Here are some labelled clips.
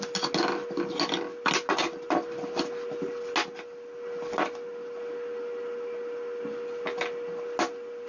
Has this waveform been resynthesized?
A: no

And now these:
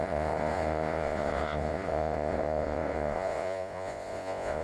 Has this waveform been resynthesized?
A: yes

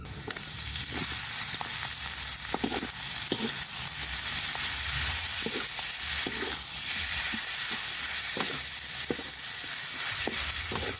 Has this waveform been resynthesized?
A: no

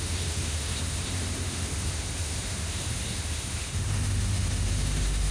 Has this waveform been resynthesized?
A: yes